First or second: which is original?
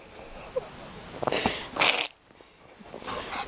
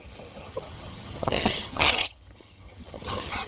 first